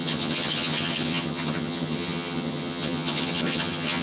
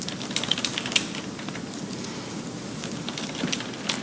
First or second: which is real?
second